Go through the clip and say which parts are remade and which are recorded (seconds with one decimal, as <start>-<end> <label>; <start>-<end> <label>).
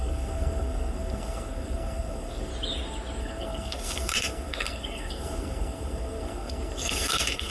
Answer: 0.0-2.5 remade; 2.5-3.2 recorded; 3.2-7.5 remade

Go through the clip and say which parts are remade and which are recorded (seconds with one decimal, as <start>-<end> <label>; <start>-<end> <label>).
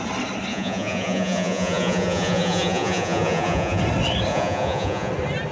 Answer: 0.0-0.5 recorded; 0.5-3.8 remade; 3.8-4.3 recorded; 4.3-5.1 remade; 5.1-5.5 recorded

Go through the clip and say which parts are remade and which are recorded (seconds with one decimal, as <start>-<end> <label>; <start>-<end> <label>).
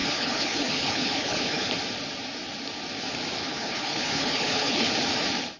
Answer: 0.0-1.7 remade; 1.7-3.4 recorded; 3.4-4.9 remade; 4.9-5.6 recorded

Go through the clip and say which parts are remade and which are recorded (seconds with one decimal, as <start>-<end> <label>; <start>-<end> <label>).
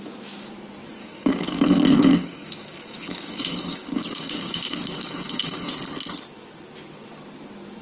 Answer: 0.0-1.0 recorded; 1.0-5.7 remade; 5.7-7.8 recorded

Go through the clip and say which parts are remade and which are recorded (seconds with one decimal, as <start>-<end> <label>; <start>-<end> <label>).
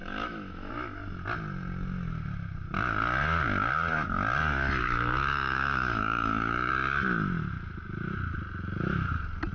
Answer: 0.0-0.7 remade; 0.7-4.8 recorded; 4.8-6.7 remade; 6.7-9.5 recorded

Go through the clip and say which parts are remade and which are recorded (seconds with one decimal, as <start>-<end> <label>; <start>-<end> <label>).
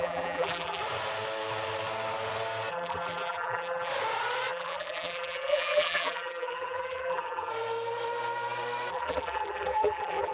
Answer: 0.0-0.8 remade; 0.8-2.7 recorded; 2.7-3.9 remade; 3.9-4.5 recorded; 4.5-7.5 remade; 7.5-8.9 recorded; 8.9-10.3 remade